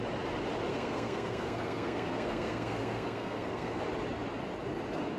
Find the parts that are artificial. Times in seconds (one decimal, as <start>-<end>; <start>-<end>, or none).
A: 0.7-3.8